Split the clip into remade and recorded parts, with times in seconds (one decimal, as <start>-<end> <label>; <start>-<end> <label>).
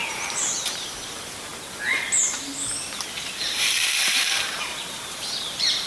0.0-1.5 remade; 1.5-3.4 recorded; 3.4-5.9 remade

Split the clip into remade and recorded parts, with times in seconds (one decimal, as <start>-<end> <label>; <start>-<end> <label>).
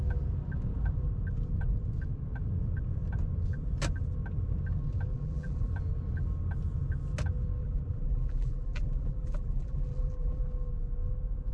0.0-5.1 recorded; 5.1-5.7 remade; 5.7-7.6 recorded; 7.6-10.4 remade; 10.4-11.5 recorded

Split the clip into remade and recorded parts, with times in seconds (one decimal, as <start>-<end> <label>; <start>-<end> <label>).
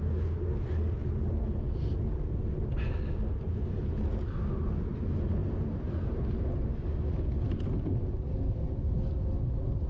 0.0-9.9 recorded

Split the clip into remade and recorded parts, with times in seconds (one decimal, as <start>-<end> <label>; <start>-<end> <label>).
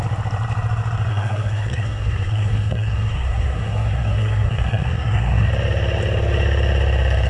0.0-1.1 recorded; 1.1-5.5 remade; 5.5-7.3 recorded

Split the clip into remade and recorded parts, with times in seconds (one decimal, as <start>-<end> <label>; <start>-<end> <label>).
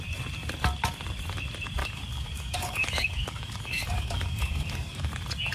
0.0-1.8 recorded; 1.8-5.1 remade; 5.1-5.5 recorded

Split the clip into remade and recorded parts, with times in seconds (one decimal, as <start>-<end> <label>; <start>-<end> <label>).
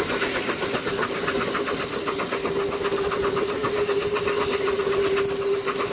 0.0-5.9 recorded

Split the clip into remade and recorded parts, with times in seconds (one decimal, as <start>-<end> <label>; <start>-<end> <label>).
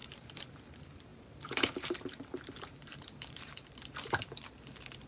0.0-5.1 remade